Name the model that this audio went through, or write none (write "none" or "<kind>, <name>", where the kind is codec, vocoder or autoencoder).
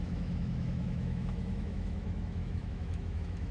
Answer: autoencoder, DAC-VAE